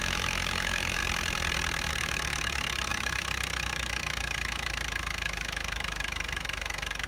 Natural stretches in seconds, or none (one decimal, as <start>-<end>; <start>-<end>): 1.0-1.9